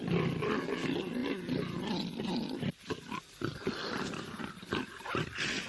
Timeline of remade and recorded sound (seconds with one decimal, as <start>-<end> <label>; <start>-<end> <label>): 0.0-5.7 recorded